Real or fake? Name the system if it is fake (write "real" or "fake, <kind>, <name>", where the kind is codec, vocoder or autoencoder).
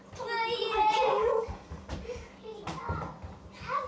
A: real